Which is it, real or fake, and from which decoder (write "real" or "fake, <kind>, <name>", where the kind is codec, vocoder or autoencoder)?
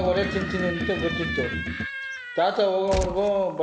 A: real